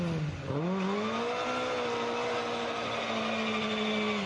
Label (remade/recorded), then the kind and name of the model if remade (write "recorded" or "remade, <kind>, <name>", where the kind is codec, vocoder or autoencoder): recorded